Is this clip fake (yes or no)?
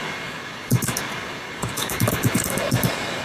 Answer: yes